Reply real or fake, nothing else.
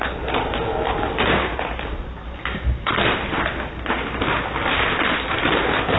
real